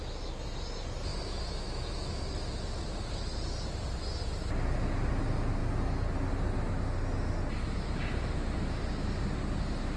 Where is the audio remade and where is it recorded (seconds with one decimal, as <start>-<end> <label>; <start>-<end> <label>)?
0.0-1.1 recorded; 1.1-2.8 remade; 2.8-10.0 recorded